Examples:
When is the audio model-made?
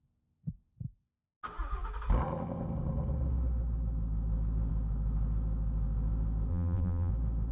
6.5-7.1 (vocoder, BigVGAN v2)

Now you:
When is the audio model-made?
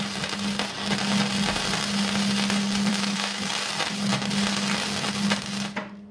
2.9-3.5 (autoencoder, DAC-VAE)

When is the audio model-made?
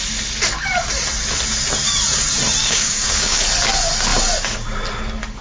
2.6-3.4 (codec, DAC)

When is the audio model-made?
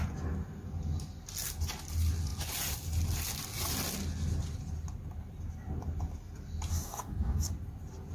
6.7-7.5 (codec, DAC)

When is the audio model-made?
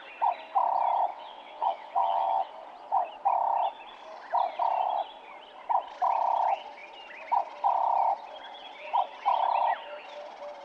1.1-2.5 (vocoder, WaveNeXt)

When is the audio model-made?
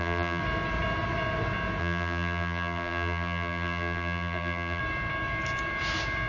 0.0-0.4 (vocoder, BigVGAN v2); 1.8-4.8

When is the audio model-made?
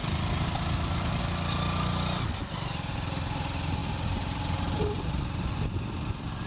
none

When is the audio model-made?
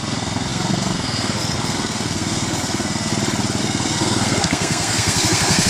0.0-3.1 (codec, SNAC); 3.6-5.7